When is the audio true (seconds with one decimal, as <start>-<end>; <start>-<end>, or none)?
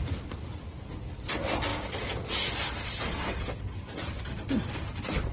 0.0-5.3